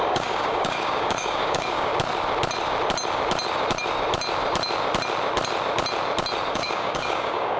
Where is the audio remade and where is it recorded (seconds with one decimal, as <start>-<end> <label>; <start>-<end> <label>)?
0.0-1.9 remade; 1.9-6.5 recorded; 6.5-7.6 remade